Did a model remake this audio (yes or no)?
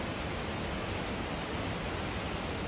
no